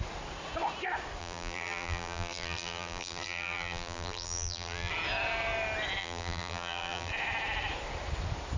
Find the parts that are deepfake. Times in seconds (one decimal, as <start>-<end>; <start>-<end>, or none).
1.2-4.9; 6.0-7.1